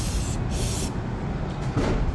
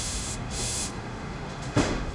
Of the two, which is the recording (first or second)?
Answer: first